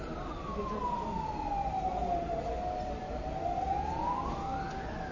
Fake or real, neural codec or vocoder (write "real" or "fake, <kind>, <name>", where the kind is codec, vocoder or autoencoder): real